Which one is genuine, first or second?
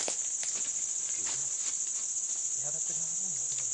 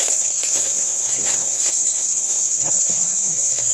first